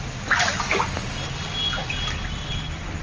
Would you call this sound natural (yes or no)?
yes